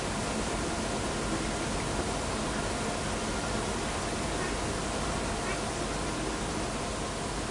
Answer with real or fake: real